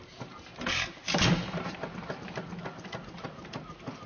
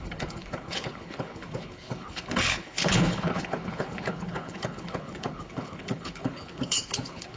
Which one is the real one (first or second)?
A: first